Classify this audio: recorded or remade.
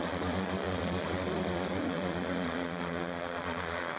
remade